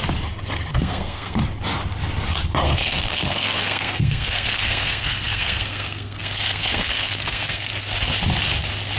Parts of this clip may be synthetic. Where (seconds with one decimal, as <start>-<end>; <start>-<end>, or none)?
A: 0.7-1.4; 2.6-7.7